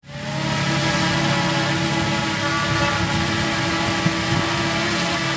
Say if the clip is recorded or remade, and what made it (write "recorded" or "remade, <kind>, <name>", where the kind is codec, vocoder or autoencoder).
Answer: recorded